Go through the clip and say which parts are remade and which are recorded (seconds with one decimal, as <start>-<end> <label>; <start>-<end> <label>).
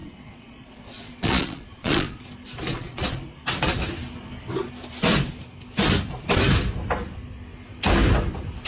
0.0-2.2 remade; 2.2-2.7 recorded; 2.7-3.2 remade; 3.2-8.7 recorded